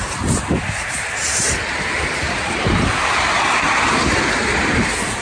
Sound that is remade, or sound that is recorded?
recorded